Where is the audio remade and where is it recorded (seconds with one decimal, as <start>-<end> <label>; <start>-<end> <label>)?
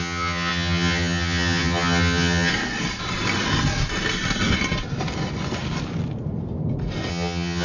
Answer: 0.0-2.5 remade; 2.5-7.1 recorded; 7.1-7.6 remade